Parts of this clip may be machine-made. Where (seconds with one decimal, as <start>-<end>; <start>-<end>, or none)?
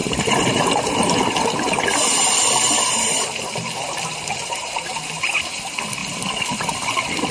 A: 0.0-1.2; 4.4-5.6